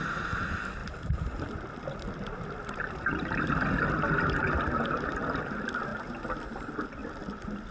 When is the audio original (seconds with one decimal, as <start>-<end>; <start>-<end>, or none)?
0.0-5.9; 6.6-7.0